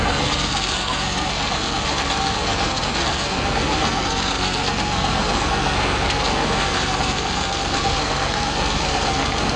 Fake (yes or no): yes